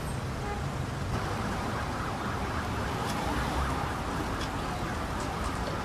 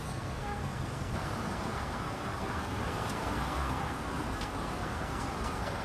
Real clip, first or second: first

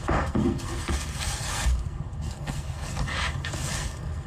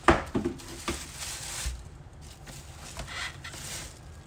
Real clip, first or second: second